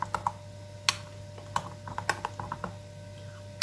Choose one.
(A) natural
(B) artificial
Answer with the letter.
A